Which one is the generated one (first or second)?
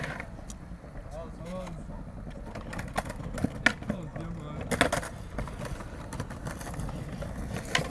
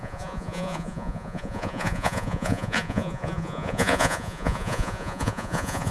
second